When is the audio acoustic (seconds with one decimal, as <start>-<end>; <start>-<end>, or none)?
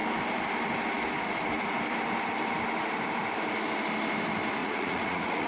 0.0-4.6